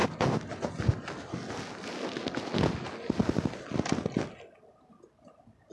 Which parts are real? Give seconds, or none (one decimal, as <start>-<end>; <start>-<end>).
0.0-5.7